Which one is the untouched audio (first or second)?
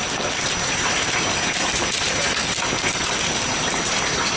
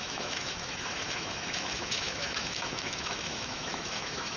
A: first